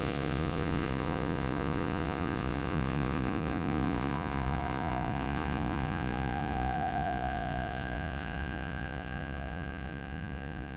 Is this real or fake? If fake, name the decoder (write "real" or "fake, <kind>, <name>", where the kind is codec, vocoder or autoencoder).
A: fake, vocoder, Vocos